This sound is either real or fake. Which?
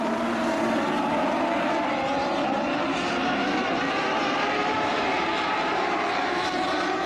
fake